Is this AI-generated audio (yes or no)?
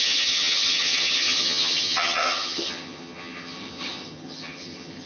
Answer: yes